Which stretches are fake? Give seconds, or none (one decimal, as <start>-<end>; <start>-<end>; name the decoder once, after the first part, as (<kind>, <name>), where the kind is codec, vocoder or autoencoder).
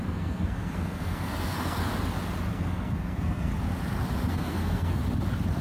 0.0-1.9 (codec, SNAC); 2.5-3.5; 4.3-5.0